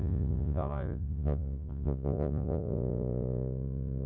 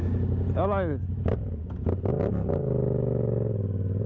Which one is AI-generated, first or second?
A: first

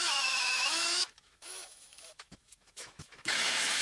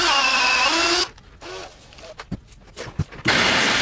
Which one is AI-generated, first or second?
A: first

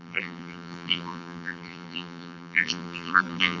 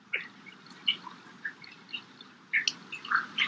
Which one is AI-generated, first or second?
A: first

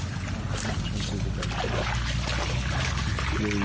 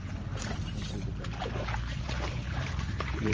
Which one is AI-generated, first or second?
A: second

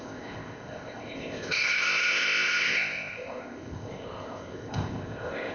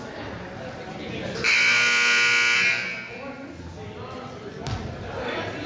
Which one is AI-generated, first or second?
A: first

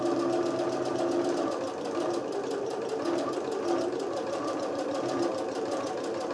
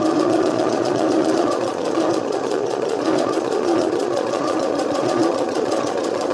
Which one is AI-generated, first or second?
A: second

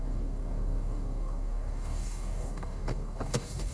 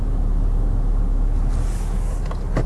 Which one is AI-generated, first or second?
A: first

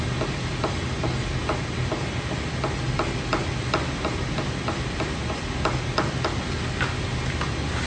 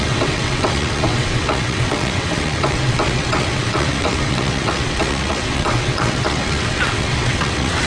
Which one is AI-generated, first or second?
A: second